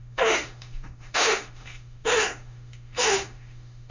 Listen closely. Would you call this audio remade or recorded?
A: remade